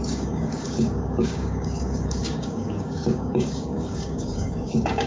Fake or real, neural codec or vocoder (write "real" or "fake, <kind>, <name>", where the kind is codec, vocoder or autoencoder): fake, codec, DAC